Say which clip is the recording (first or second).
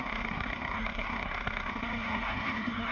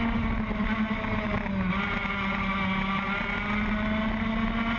second